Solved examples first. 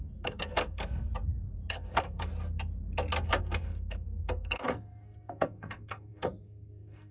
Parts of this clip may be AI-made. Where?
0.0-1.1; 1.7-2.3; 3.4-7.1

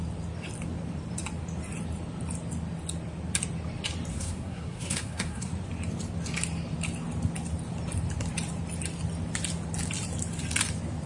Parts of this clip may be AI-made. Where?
4.1-5.5